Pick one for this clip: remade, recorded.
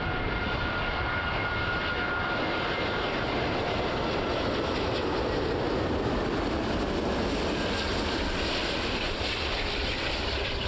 recorded